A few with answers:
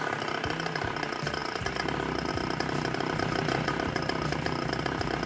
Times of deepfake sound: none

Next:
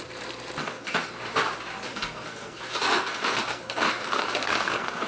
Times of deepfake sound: 0.6-1.1 (codec, SNAC); 1.9-5.1

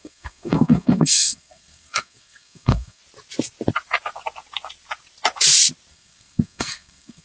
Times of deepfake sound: 0.0-3.0 (codec, SNAC); 5.9-7.2